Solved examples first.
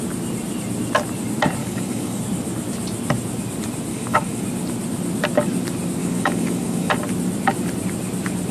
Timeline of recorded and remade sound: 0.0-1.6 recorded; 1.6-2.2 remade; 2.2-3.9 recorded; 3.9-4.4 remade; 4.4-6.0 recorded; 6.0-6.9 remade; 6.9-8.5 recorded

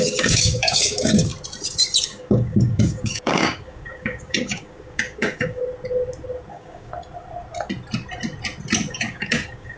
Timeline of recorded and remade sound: 0.0-1.3 remade; 1.3-2.0 recorded; 2.0-5.6 remade; 5.6-6.5 recorded; 6.5-6.9 remade; 6.9-8.9 recorded; 8.9-9.8 remade

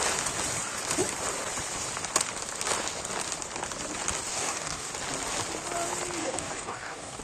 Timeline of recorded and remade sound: 0.0-4.3 recorded; 4.3-4.9 remade; 4.9-6.2 recorded; 6.2-7.2 remade